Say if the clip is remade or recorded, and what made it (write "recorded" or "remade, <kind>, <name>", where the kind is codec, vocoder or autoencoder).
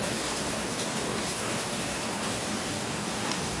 remade, codec, DAC